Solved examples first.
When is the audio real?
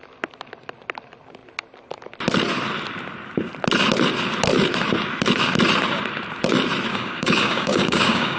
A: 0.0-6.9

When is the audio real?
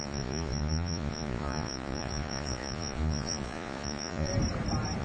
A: 4.3-5.0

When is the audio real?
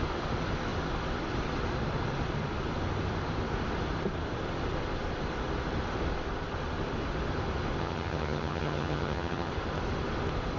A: 0.0-7.8; 9.5-10.6